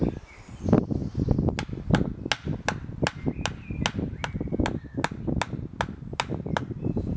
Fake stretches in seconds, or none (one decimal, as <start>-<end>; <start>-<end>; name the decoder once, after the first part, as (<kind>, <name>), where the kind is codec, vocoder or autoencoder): none